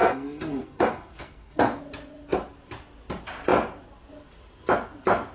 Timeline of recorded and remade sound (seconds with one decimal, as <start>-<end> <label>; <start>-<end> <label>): 0.0-1.8 remade; 1.8-5.3 recorded